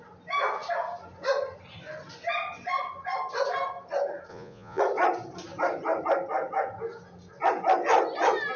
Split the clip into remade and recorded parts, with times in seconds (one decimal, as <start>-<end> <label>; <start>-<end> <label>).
0.0-4.3 recorded; 4.3-4.8 remade; 4.8-8.6 recorded